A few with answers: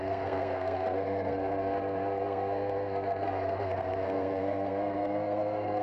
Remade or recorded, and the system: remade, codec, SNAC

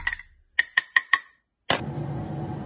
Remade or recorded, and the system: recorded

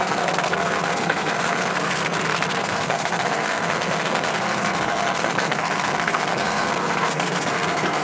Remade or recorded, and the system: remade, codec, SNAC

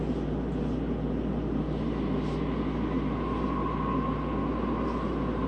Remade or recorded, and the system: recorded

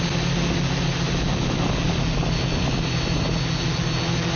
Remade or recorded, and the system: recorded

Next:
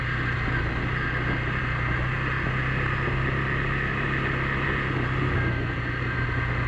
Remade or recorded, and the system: recorded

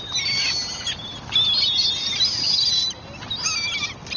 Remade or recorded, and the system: recorded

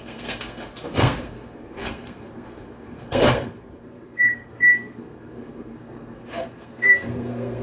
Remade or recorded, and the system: remade, codec, SNAC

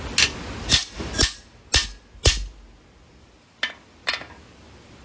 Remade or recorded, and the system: recorded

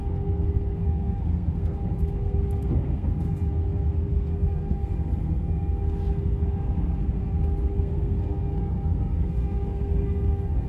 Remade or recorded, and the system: remade, codec, SNAC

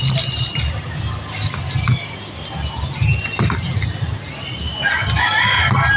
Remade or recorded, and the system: recorded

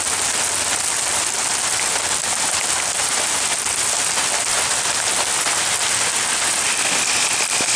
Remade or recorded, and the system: recorded